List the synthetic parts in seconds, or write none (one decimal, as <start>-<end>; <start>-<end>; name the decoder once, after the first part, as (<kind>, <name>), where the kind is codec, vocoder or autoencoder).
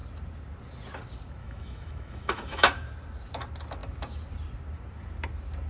1.4-2.9 (autoencoder, DAC-VAE)